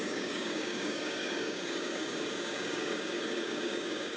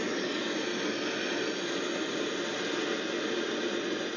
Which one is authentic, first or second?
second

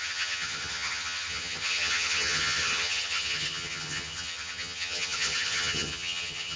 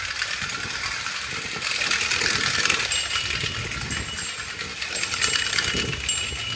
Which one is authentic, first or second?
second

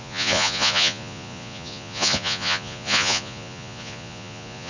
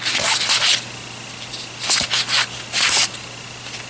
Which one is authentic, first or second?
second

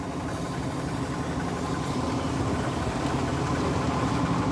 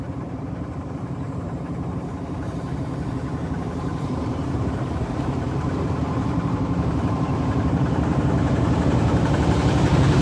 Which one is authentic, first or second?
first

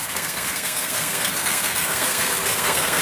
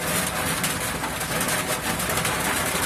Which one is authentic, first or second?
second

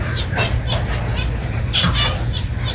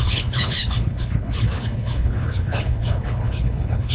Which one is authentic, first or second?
first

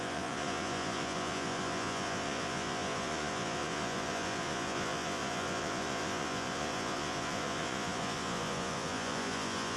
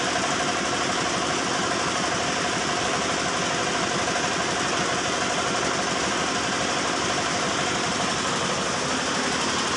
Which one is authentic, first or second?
second